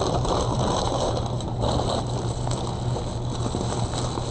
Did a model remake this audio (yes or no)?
no